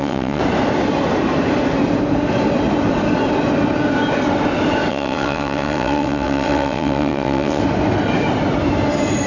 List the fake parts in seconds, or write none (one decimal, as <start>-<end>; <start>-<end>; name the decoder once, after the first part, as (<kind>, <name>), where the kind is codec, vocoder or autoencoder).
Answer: 0.0-0.4 (vocoder, WaveNeXt); 4.9-7.6